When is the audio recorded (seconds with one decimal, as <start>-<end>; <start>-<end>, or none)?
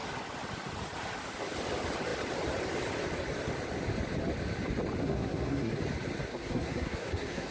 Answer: 0.0-5.0; 5.8-6.3